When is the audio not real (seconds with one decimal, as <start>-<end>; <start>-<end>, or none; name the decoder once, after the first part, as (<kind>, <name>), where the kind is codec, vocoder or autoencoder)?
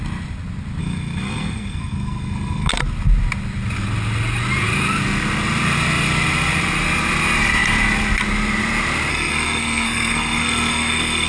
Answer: 0.8-2.7 (codec, SNAC); 9.1-11.3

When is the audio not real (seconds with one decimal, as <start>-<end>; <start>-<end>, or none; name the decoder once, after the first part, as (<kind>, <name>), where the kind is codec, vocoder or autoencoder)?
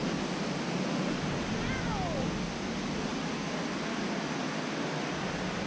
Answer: none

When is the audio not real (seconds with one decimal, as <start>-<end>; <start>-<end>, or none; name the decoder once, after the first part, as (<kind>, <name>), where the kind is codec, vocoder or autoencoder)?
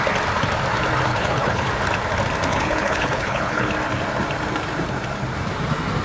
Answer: 1.1-1.7 (codec, HILCodec); 2.5-3.7